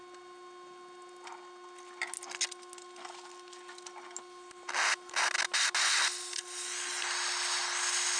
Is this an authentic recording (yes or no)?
yes